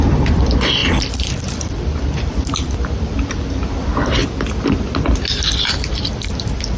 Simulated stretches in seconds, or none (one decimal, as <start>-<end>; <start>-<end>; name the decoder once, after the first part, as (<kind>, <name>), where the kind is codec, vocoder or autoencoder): 0.0-4.2 (vocoder, BigVGAN v2); 5.7-6.8